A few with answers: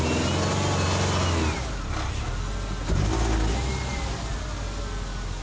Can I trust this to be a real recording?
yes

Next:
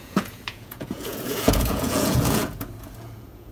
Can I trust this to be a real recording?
no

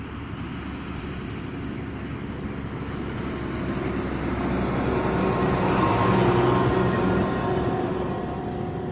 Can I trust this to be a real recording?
yes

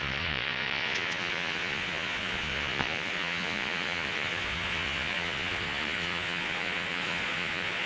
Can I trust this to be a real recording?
no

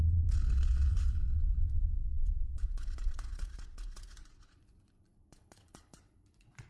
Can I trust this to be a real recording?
no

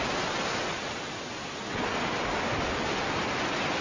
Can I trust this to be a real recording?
yes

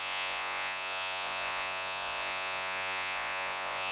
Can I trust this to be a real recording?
no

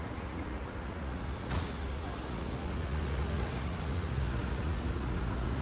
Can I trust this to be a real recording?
no